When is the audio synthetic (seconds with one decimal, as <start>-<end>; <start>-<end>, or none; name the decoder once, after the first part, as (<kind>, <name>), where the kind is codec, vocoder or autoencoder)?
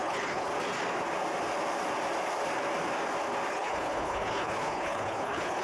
0.0-0.5 (codec, HILCodec); 3.5-5.6